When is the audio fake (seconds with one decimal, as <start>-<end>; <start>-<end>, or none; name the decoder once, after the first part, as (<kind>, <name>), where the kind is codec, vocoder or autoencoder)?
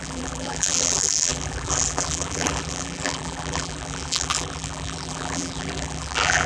0.0-6.5 (vocoder, BigVGAN v2)